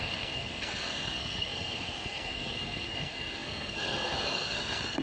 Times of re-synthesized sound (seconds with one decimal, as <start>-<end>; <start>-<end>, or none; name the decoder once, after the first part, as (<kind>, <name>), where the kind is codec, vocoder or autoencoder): 0.0-5.0 (codec, SNAC)